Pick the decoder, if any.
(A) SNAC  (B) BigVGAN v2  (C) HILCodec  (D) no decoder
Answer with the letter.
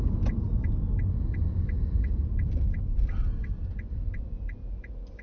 D